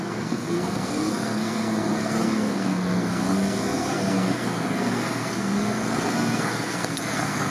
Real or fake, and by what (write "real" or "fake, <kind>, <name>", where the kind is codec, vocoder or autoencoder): fake, codec, SNAC